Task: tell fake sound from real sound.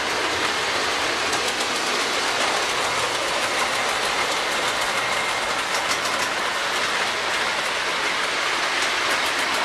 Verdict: real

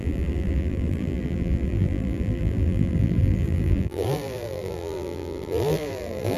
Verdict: fake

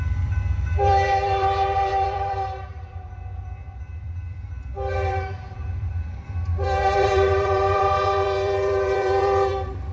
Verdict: fake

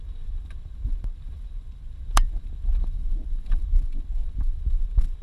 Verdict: fake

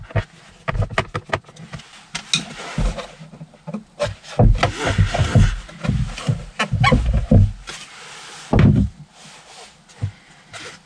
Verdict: real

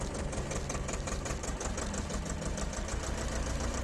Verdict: fake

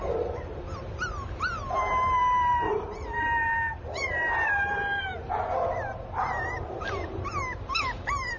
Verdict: fake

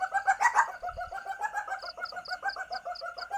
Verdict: real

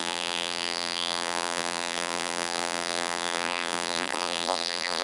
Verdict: fake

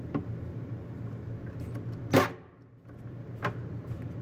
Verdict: real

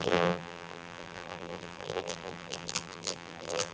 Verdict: fake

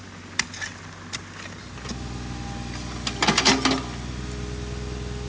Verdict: real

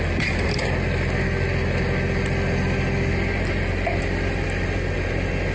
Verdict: real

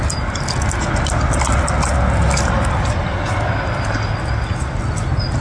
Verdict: real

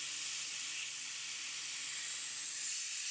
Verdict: fake